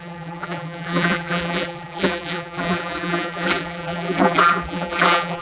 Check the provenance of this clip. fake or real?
fake